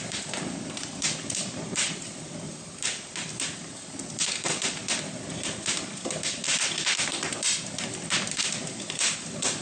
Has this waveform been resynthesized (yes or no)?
yes